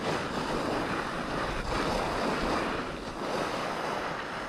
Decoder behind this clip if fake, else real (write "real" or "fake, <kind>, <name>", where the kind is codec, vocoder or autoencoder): real